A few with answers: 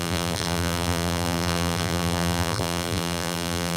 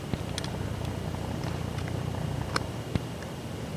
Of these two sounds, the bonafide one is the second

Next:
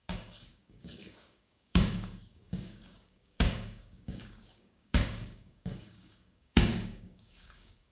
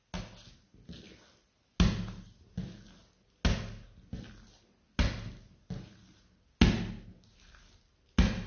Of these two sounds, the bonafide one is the second